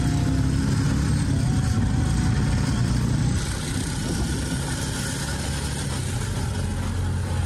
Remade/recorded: recorded